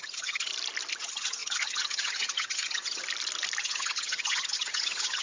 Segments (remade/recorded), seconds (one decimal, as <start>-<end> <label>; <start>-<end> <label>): 0.0-0.5 remade; 0.5-1.0 recorded; 1.0-3.0 remade; 3.0-3.6 recorded; 3.6-5.2 remade